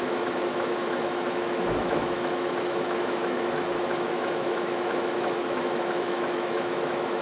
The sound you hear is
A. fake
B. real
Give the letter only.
A